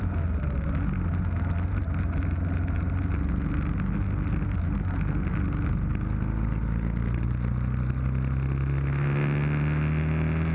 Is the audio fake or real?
real